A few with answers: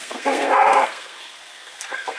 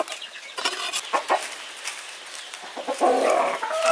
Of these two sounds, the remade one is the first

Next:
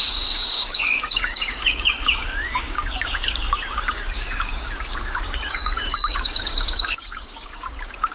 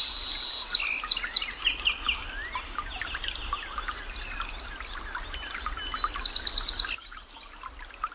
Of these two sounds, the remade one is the first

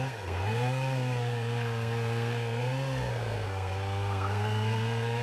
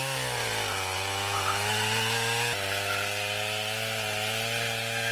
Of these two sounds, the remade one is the first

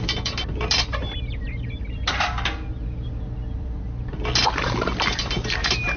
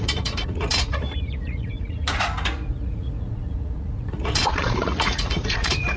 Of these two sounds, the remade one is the second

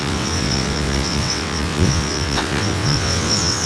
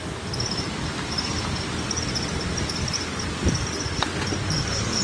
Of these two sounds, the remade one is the first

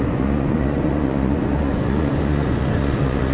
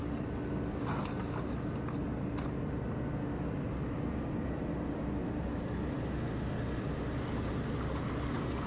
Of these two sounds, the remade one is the first